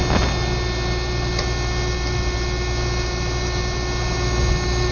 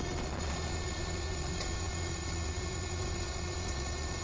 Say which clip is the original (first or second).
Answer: first